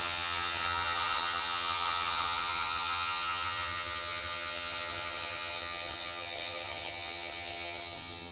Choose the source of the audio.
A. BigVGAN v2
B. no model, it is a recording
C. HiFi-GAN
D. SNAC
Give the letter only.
C